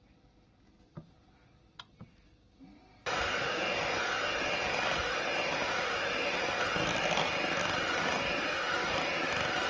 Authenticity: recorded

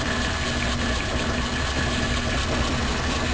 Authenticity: recorded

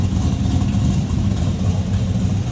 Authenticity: recorded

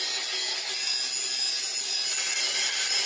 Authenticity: recorded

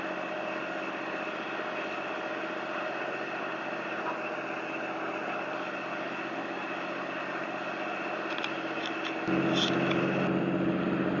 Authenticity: recorded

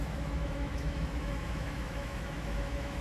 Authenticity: remade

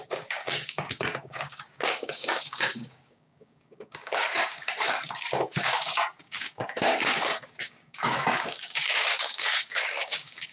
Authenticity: remade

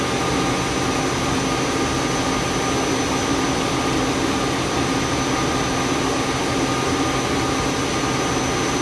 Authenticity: recorded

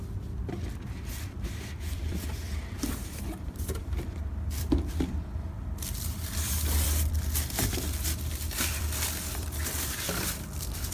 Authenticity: remade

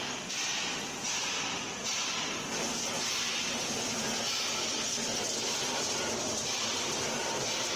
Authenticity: recorded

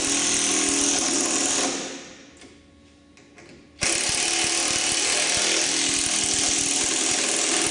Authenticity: recorded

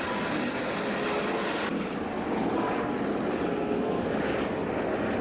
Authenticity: recorded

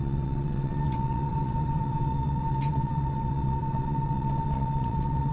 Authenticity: remade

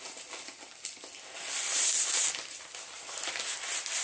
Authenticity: recorded